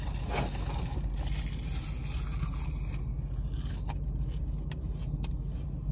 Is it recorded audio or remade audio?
recorded